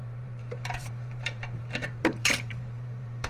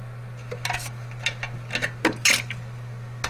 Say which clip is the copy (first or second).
first